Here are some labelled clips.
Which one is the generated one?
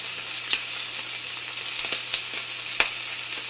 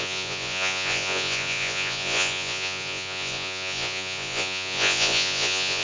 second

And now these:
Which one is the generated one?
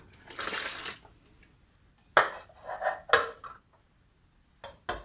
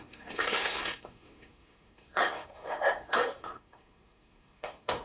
second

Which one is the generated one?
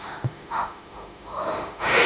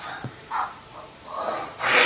first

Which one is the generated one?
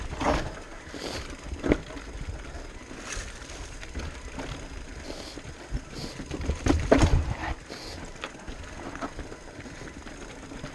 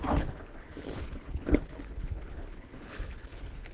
second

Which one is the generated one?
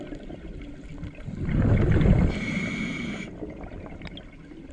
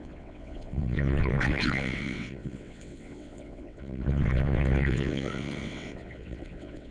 second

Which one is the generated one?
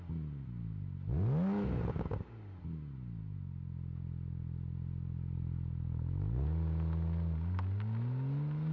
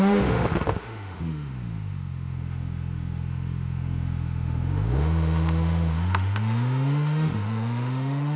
second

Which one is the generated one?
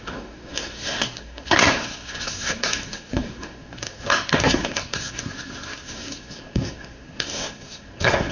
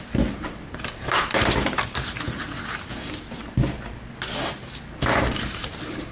first